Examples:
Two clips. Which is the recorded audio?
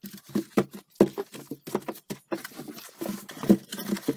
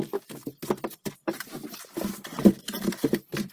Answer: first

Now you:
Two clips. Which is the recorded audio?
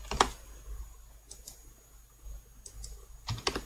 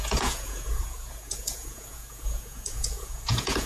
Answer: first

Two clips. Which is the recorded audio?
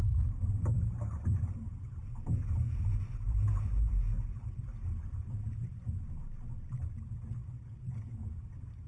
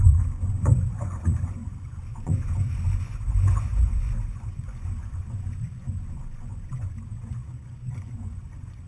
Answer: first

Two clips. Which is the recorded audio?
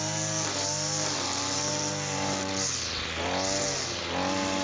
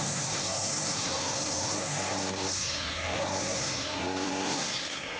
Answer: first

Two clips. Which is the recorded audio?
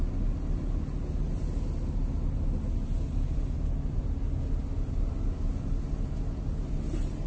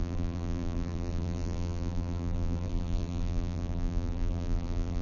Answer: first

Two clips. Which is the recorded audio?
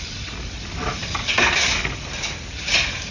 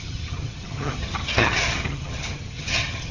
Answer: first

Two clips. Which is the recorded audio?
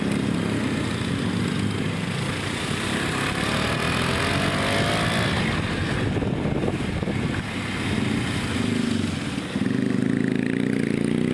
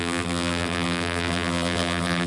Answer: first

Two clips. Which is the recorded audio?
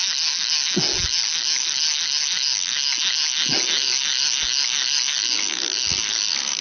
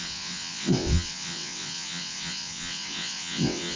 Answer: first